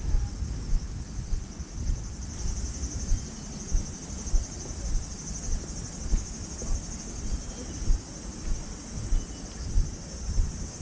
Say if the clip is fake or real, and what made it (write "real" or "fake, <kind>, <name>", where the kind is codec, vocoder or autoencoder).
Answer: real